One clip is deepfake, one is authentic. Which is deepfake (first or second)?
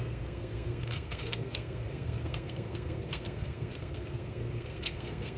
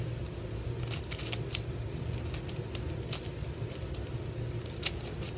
first